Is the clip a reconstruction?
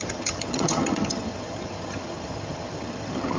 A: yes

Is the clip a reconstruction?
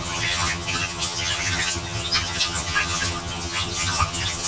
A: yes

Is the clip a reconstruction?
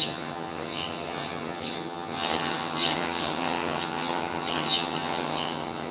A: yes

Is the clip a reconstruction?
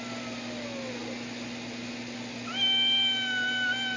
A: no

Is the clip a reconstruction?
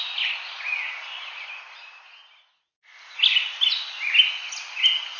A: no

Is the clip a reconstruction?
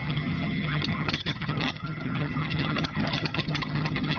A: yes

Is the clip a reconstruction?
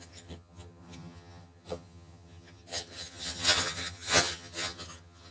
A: yes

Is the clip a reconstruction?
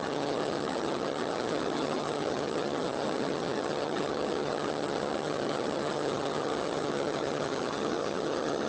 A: yes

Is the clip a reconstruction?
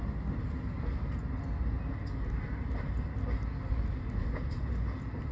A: no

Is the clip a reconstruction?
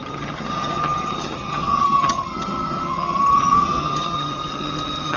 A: yes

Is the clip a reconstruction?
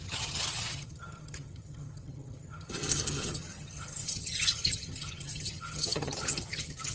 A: yes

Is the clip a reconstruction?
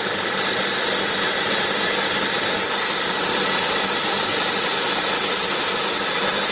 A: no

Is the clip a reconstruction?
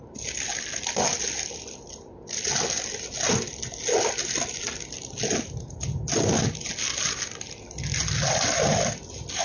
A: no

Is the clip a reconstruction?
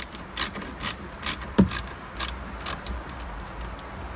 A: no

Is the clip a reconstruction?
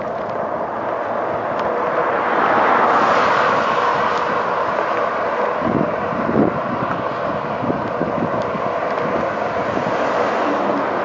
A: no